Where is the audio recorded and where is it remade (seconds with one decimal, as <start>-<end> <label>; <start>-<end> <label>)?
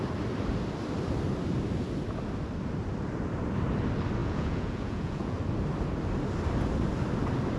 0.0-4.2 recorded; 4.2-5.4 remade; 5.4-7.6 recorded